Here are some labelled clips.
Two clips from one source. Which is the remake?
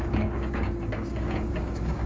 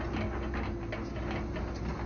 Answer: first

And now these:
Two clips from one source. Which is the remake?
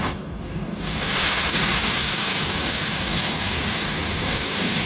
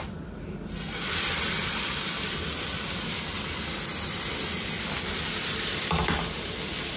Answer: first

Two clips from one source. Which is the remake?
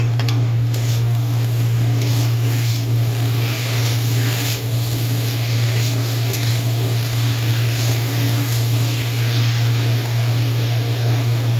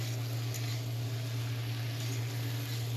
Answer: first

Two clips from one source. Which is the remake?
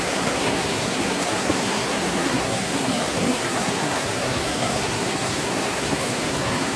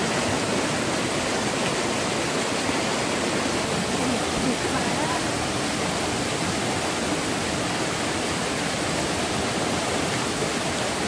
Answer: first